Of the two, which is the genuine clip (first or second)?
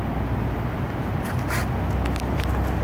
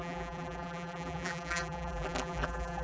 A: first